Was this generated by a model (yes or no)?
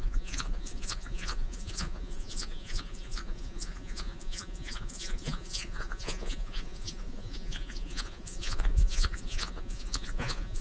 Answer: yes